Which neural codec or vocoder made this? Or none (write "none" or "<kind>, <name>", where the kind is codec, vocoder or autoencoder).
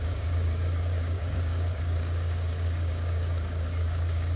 codec, DAC